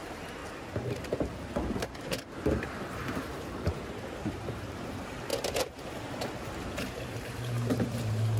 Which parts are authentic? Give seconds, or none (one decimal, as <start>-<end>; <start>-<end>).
0.4-1.6; 5.3-6.3